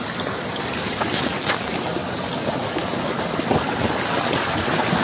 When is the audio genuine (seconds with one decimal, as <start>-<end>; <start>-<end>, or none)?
0.0-5.0